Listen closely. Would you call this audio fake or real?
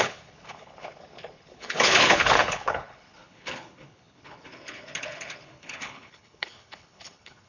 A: fake